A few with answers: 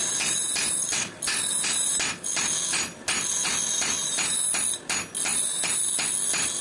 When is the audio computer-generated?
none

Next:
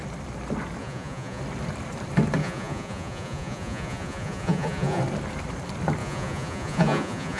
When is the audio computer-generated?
0.8-1.4; 2.4-5.0; 6.0-7.4

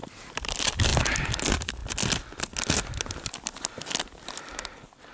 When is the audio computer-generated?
none

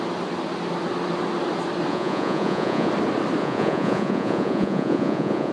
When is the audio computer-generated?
1.9-2.9; 3.4-5.5

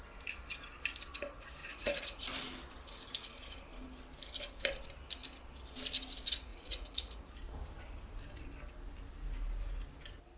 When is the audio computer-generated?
1.6-2.2; 6.5-7.2

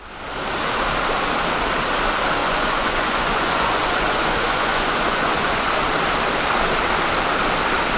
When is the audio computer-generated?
2.4-5.7